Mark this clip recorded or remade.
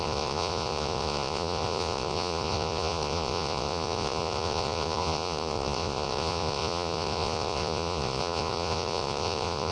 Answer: remade